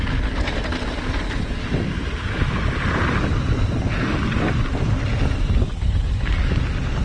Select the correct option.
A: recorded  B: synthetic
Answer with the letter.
A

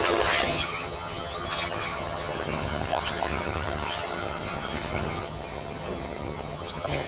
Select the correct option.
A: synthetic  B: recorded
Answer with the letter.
A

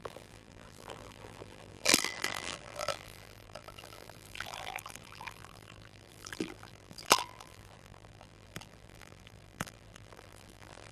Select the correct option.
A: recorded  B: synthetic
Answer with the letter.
B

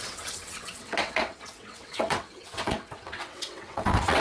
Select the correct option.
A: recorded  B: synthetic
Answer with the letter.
B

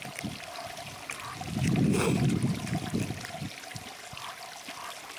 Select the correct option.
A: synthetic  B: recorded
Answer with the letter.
B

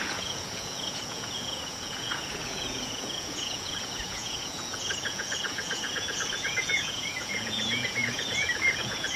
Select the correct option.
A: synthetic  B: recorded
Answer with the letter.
A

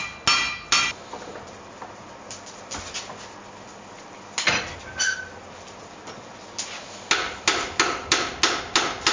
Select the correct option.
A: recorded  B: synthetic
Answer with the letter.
A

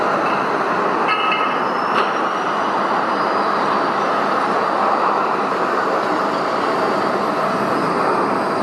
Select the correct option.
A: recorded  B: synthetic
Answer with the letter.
A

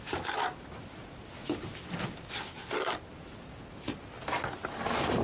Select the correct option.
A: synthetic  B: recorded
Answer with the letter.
B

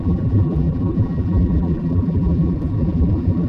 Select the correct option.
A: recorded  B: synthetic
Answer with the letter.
B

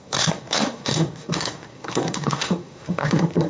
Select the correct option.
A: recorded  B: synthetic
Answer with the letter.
B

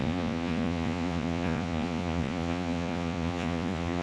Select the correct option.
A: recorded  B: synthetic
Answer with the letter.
B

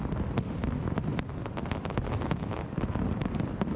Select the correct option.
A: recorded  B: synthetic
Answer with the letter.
A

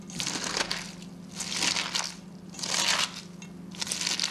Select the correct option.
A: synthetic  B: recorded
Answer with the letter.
B